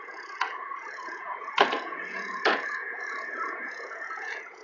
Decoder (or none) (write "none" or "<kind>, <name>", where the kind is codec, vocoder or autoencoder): vocoder, Vocos